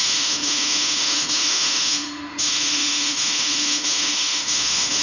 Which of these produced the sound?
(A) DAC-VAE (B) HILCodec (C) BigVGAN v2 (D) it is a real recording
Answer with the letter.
A